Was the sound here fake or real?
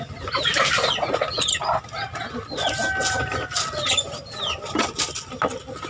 real